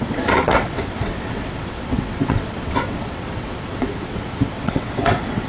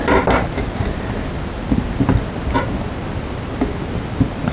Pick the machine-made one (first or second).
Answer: first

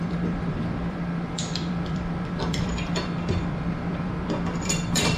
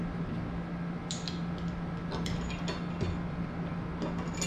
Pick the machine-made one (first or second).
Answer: first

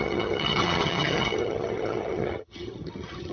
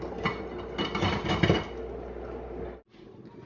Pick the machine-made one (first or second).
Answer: first